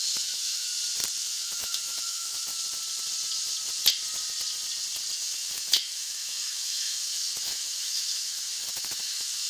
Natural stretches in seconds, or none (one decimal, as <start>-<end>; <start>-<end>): 0.7-1.2; 2.5-5.2